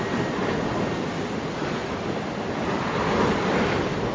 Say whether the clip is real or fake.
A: real